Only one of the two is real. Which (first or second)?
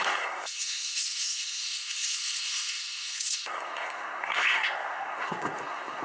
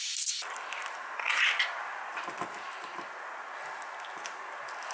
second